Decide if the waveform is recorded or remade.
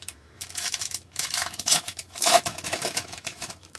remade